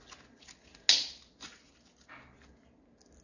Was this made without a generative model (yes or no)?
yes